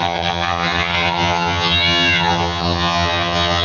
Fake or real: fake